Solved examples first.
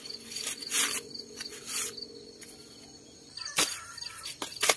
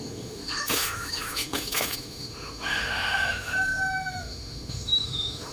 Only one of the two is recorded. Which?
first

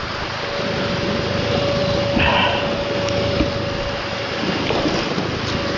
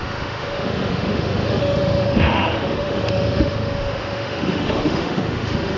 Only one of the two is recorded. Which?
first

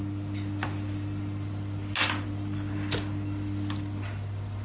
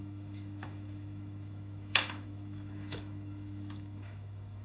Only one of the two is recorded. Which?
first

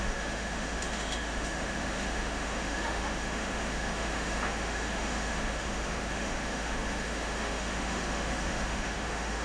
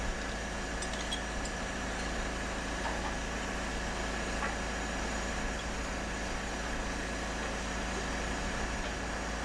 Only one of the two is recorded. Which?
second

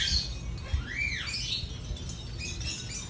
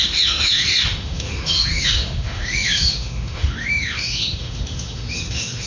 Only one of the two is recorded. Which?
first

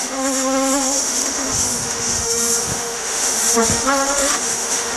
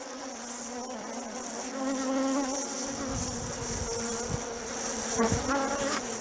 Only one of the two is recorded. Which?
second